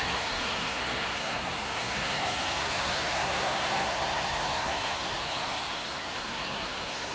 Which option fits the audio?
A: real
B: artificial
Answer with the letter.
B